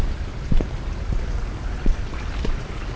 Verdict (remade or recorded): recorded